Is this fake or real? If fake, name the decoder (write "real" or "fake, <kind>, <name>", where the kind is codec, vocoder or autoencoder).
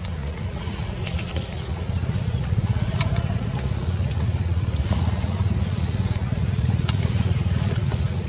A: fake, vocoder, Vocos